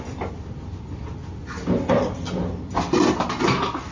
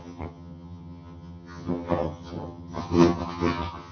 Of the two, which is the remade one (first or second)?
second